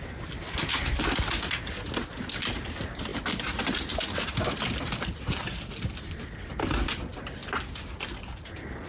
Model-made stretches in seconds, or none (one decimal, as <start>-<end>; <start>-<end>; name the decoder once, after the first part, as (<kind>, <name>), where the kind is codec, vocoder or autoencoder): none